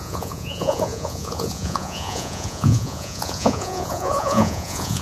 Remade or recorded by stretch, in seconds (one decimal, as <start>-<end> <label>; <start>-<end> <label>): 0.0-5.0 remade